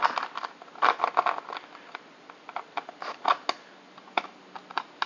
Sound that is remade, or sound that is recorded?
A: recorded